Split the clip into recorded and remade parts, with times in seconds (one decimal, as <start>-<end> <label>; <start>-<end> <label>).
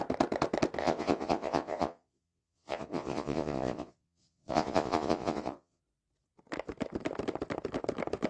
0.0-0.8 recorded; 0.8-5.8 remade; 5.8-8.3 recorded